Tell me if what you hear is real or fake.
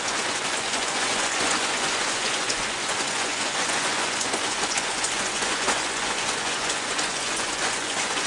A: fake